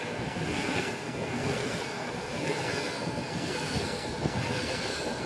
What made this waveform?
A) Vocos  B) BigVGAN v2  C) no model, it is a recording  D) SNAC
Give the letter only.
D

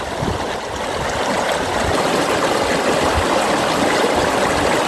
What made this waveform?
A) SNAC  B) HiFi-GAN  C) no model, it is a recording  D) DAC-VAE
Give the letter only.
C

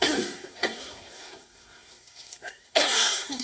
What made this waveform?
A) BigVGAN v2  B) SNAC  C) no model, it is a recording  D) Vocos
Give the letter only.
B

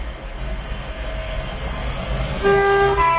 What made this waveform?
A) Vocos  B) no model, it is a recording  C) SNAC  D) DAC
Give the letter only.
C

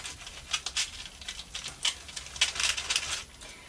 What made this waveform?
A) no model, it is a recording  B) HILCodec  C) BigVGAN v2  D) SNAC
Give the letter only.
A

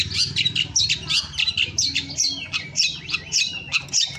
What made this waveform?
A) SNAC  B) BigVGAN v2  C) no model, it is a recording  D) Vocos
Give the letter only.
C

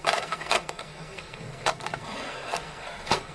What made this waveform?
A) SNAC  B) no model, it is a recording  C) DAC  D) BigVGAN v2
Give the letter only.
A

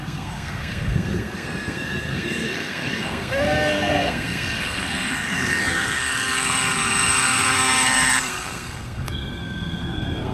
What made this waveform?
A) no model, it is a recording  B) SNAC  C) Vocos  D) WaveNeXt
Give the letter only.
B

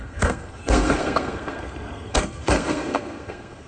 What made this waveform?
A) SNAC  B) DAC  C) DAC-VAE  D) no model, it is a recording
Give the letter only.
A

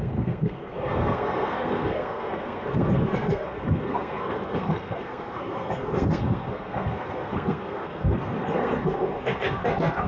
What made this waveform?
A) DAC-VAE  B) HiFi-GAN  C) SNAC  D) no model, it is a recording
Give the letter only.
C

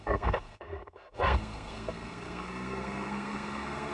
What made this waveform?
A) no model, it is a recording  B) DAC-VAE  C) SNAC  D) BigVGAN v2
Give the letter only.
C